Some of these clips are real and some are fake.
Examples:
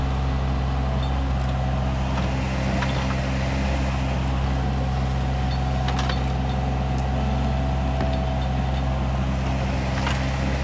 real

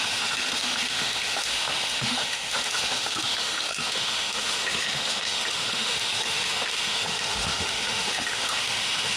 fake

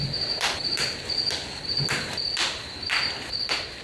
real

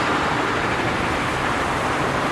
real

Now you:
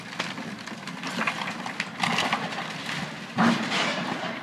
real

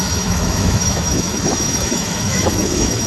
fake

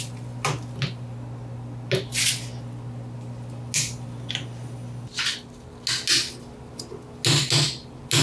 real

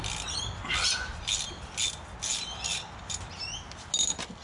real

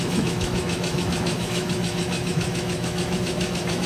fake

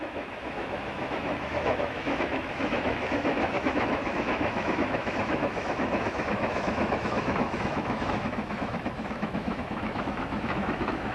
fake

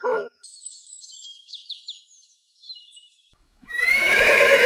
fake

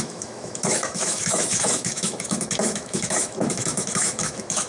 fake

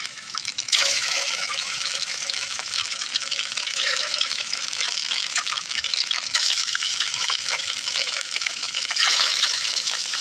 fake